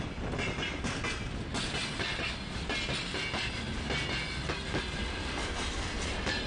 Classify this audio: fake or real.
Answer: real